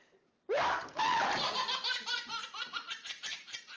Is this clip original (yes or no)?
no